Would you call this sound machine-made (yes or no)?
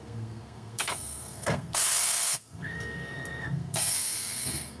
yes